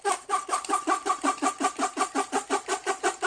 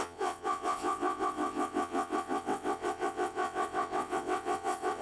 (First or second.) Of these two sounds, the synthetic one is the second